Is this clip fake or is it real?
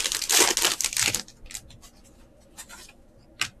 real